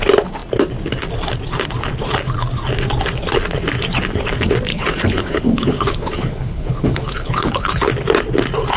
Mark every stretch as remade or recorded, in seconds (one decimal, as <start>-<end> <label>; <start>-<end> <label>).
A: 0.0-4.7 recorded; 4.7-7.9 remade; 7.9-8.8 recorded